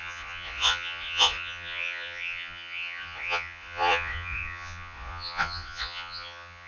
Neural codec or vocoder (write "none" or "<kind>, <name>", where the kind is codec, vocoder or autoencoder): vocoder, Vocos